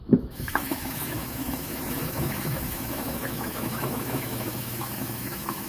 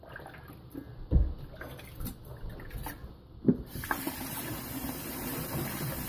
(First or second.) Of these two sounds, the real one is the second